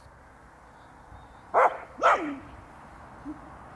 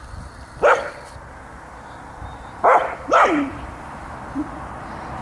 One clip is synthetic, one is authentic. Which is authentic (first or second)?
first